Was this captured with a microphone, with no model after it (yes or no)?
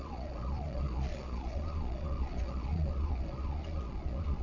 no